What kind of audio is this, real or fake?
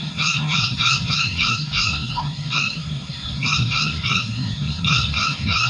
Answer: fake